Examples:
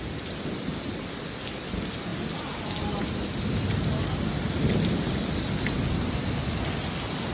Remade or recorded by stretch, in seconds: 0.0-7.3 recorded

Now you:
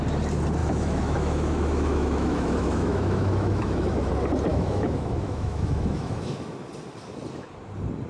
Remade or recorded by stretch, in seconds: 0.0-0.6 recorded; 0.6-4.1 remade; 4.1-4.5 recorded; 4.5-6.5 remade; 6.5-8.1 recorded

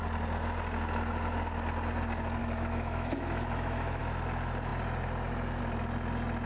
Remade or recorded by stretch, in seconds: 0.0-2.4 recorded; 2.4-4.0 remade; 4.0-6.5 recorded

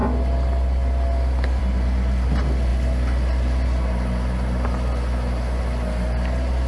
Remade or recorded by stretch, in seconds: 0.0-6.7 recorded